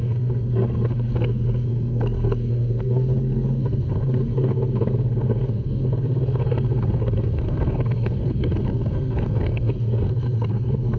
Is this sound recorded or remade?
remade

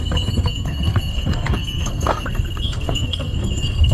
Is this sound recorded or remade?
remade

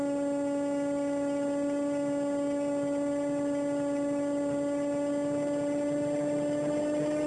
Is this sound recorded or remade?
recorded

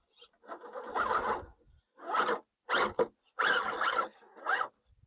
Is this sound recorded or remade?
recorded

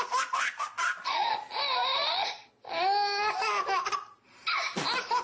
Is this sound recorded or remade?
recorded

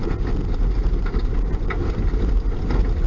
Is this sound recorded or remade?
recorded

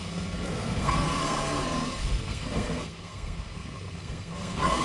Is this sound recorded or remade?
remade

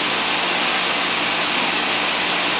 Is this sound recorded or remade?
recorded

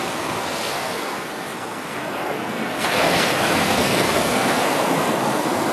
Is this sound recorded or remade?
remade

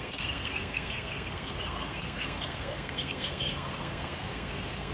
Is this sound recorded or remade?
remade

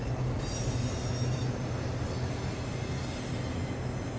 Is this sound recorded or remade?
recorded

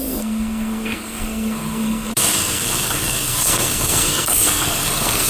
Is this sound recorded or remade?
remade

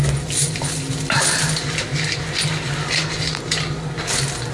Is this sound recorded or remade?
recorded